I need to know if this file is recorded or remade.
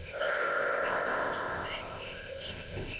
remade